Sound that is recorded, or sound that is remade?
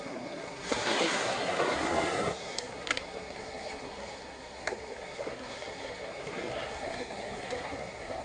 remade